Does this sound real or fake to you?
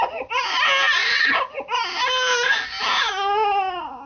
real